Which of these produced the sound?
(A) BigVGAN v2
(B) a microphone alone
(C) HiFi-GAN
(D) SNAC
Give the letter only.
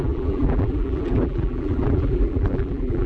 A